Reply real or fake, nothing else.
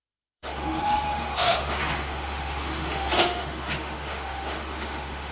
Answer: fake